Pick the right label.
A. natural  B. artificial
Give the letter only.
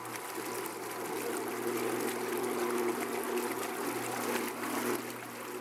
A